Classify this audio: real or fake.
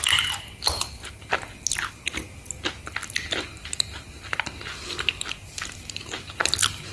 real